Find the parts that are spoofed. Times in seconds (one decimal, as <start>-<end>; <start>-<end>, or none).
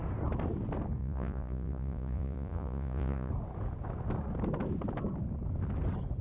1.0-3.3